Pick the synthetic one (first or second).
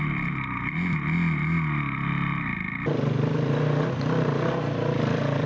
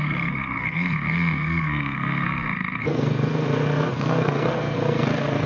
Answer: second